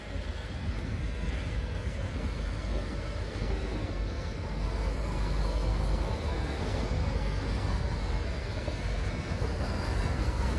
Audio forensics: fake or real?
fake